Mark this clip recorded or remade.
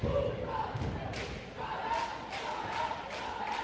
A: recorded